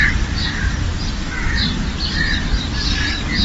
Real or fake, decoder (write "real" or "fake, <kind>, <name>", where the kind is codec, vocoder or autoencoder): real